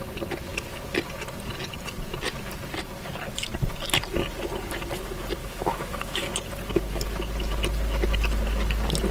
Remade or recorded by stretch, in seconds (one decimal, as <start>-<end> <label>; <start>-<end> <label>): 0.0-5.4 recorded; 5.4-6.3 remade; 6.3-9.1 recorded